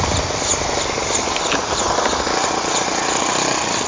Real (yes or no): yes